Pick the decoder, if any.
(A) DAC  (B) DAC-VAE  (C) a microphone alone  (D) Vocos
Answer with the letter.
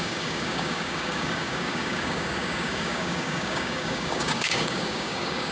A